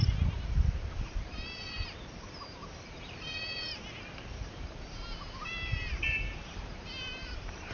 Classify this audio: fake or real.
fake